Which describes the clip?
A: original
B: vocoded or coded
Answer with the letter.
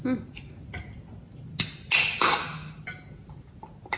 A